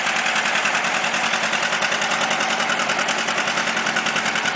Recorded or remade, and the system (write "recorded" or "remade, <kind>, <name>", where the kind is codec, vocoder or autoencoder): recorded